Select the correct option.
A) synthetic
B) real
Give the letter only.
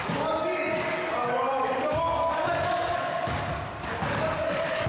A